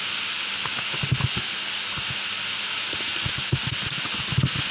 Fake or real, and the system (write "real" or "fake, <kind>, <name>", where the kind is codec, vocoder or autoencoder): real